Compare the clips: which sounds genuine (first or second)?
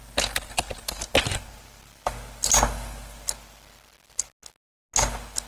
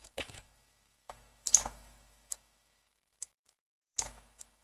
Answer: first